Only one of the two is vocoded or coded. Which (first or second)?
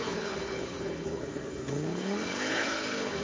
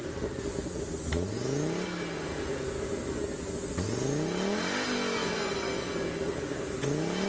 first